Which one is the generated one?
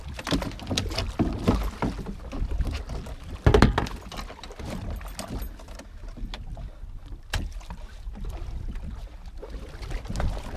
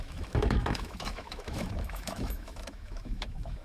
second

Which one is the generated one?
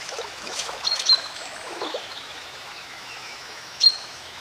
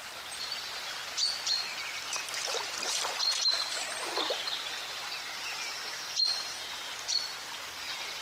first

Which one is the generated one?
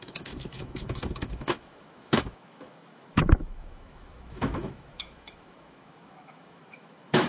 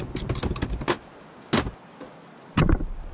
first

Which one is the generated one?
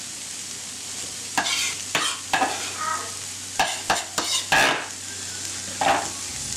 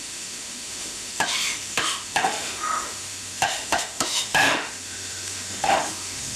second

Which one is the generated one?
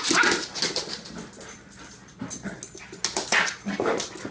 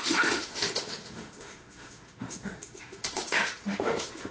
second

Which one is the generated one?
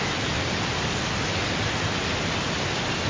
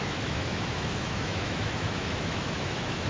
second